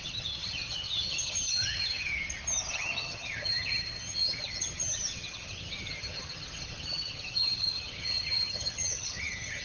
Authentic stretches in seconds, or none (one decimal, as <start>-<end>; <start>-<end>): 2.1-2.7